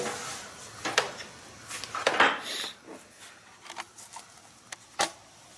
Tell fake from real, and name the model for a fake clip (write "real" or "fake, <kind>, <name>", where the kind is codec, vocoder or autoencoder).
real